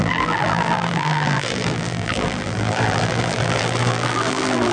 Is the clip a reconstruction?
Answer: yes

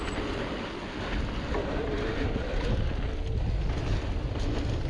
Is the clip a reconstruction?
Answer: no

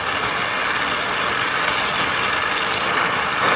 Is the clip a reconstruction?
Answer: no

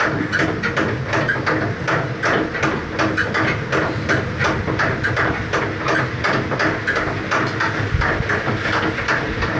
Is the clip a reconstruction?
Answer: no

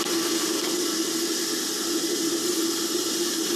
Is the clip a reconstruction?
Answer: yes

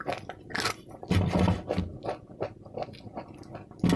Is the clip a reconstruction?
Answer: no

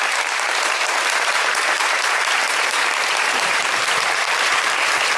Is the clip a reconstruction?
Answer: yes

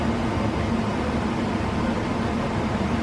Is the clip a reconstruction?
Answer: no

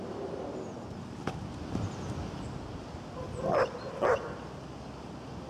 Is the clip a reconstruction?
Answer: no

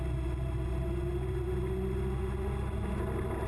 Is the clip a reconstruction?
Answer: no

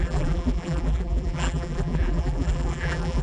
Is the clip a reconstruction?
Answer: yes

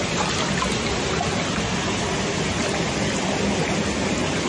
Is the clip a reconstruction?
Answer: no